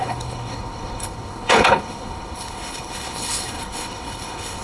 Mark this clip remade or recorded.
remade